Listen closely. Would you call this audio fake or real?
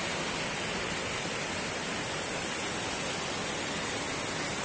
real